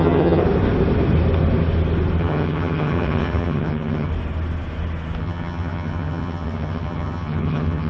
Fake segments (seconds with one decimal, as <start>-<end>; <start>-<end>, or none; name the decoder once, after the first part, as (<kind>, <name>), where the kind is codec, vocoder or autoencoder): 0.0-0.4 (vocoder, HiFi-GAN); 2.2-4.1; 5.2-7.9